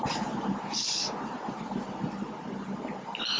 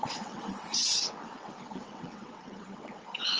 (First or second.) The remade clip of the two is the second